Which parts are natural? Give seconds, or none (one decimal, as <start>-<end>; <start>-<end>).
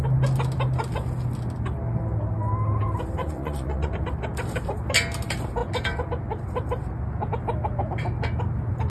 0.0-3.2; 3.9-8.9